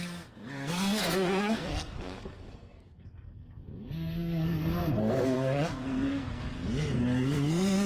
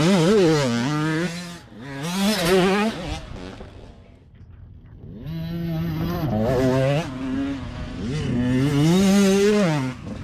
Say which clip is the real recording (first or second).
second